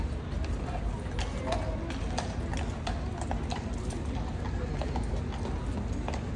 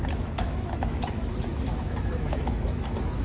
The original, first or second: first